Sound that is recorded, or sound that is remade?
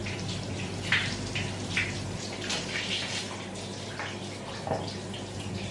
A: recorded